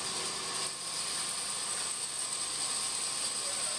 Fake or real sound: real